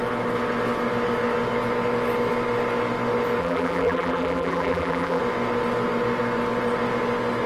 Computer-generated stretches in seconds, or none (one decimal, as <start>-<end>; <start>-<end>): 3.4-5.2